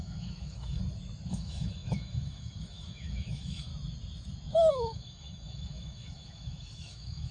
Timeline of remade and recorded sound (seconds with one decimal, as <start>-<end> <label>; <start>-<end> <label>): 0.0-0.8 remade; 0.8-1.3 recorded; 1.3-3.7 remade; 3.7-4.7 recorded; 4.7-7.3 remade